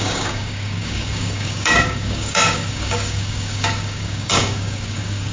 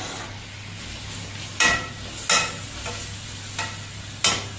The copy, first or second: first